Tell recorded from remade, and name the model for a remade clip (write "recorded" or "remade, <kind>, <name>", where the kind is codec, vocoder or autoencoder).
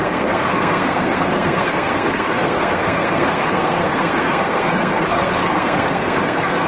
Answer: remade, codec, SNAC